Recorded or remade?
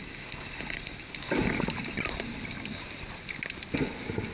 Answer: recorded